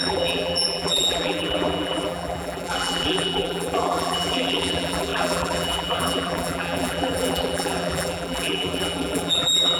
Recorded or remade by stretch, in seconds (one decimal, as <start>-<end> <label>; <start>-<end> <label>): 0.0-9.8 remade